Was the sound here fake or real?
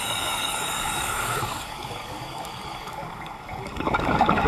fake